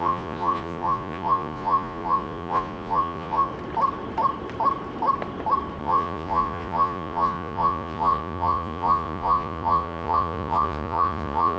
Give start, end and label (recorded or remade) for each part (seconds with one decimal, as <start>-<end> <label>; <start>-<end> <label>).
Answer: 0.0-3.5 remade; 3.5-5.8 recorded; 5.8-11.6 remade